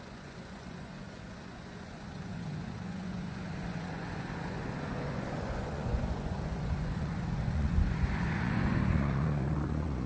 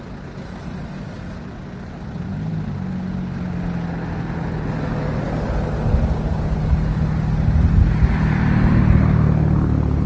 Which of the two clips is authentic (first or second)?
second